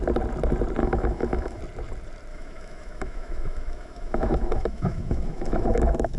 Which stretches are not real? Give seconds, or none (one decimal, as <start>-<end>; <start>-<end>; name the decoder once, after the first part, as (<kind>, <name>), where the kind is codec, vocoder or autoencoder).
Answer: 0.8-1.6 (autoencoder, DAC-VAE); 2.3-6.2